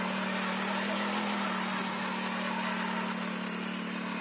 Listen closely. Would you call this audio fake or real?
real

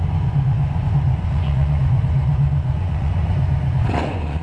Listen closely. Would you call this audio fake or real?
fake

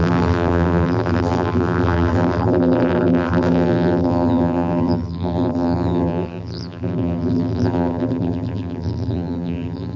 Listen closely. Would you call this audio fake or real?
fake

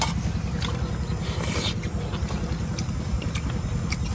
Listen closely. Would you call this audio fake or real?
real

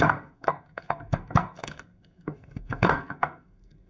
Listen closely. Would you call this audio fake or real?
fake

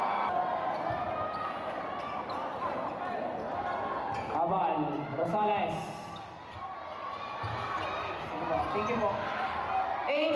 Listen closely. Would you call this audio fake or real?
real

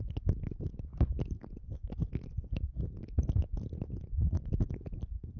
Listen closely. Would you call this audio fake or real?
real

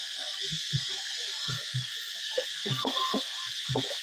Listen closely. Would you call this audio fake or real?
fake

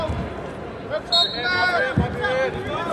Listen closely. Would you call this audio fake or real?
real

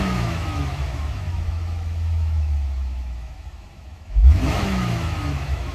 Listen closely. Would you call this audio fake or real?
fake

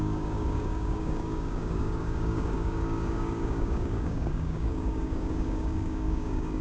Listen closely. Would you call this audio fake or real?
fake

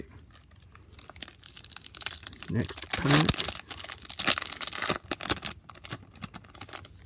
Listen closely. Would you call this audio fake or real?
real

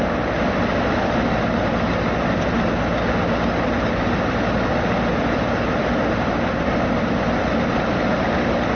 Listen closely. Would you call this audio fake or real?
real